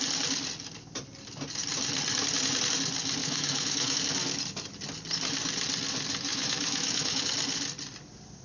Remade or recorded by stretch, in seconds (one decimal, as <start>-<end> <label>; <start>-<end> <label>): 0.0-3.2 recorded; 3.2-4.0 remade; 4.0-6.3 recorded; 6.3-7.2 remade; 7.2-8.4 recorded